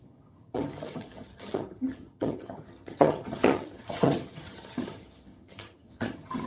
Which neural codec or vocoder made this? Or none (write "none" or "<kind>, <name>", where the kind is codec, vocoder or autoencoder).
vocoder, HiFi-GAN